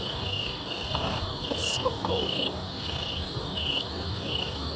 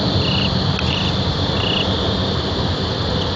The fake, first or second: first